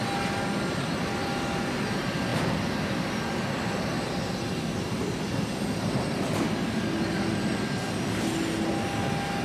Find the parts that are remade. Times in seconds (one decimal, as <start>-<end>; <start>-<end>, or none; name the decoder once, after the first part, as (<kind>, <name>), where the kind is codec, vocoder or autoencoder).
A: none